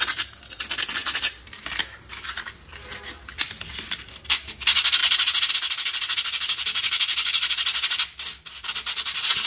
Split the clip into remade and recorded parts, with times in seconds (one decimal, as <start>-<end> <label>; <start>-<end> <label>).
0.0-9.5 recorded